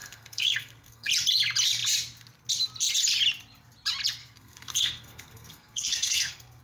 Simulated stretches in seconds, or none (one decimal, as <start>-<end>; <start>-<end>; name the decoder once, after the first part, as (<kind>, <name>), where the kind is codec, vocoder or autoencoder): 0.0-1.1 (codec, SNAC); 4.2-6.6